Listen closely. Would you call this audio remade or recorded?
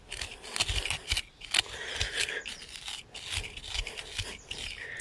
recorded